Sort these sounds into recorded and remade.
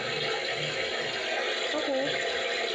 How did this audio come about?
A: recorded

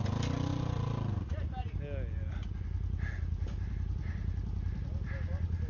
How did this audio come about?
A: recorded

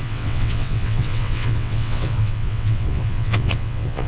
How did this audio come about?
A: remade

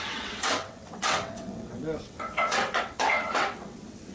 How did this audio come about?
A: remade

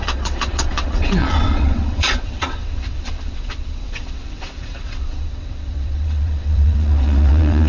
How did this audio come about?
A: remade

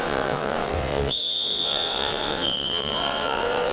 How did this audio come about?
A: remade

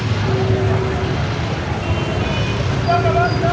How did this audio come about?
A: recorded